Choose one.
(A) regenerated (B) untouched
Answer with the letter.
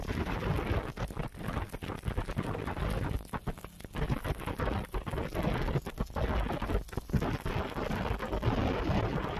B